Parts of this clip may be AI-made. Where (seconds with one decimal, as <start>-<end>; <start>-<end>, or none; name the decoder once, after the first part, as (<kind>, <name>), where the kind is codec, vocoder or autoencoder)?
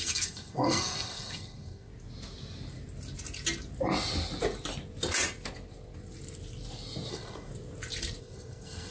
0.0-1.9 (codec, SNAC); 7.1-7.5; 8.2-8.9